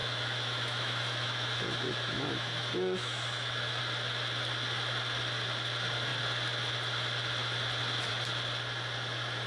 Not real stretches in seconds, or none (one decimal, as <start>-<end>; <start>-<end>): 0.0-3.8